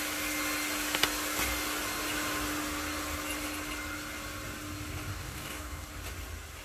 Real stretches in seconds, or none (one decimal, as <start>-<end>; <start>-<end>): 0.0-5.1; 5.9-6.6